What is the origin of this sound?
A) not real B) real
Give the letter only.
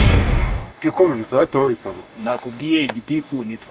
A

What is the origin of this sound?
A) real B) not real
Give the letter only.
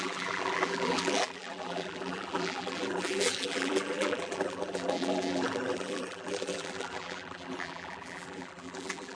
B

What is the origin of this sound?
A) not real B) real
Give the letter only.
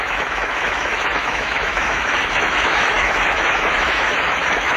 A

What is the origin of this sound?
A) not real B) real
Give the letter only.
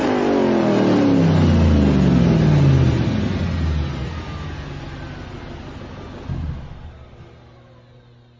B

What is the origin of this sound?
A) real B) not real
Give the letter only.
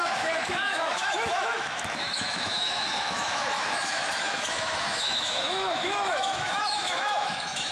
B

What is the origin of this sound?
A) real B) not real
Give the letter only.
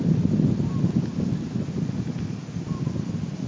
A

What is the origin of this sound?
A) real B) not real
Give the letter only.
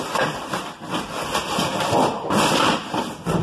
B